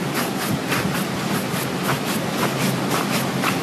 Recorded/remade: recorded